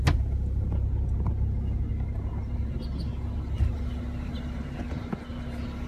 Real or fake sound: real